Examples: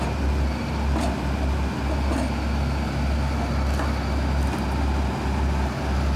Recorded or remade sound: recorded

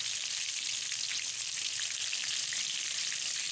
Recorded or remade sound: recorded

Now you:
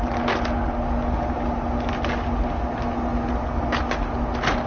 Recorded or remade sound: recorded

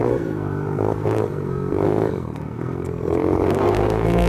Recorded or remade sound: remade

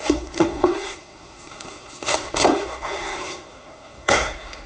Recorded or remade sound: remade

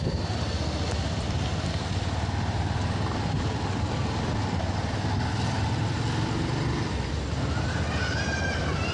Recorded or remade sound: recorded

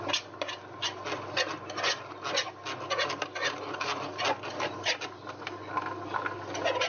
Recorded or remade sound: recorded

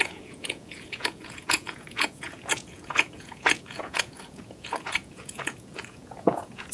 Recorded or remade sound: remade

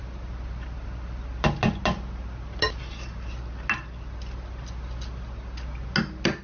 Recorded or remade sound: recorded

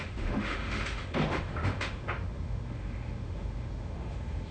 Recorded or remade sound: remade